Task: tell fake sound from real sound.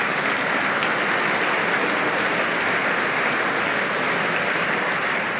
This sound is real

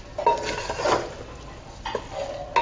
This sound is real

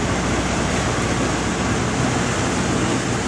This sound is real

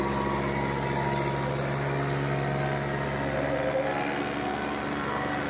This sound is real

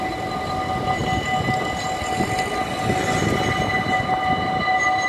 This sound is real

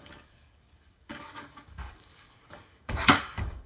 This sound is fake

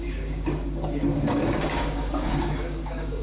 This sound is fake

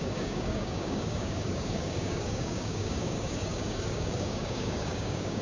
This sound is fake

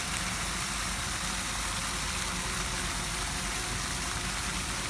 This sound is real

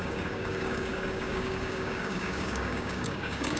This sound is fake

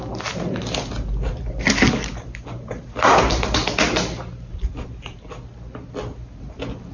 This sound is real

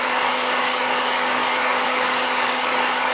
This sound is fake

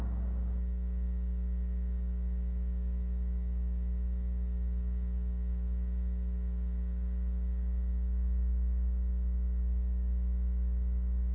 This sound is real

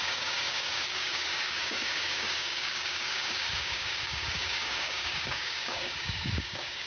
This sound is fake